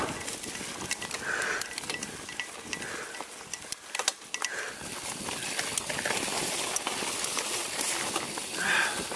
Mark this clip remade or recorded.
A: recorded